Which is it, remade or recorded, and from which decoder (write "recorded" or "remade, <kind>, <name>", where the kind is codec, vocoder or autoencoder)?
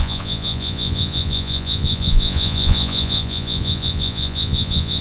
remade, vocoder, Vocos